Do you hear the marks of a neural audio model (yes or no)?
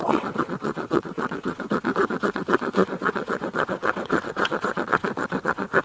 yes